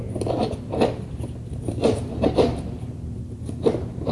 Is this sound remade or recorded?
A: recorded